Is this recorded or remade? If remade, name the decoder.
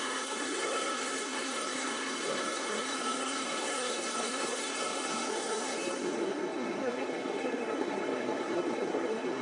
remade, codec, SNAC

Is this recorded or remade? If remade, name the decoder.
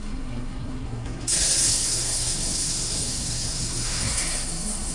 remade, codec, SNAC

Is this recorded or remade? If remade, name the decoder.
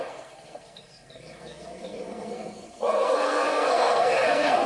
remade, codec, SNAC